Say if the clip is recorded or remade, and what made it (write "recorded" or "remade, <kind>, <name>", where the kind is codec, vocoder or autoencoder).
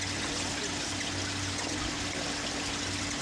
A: recorded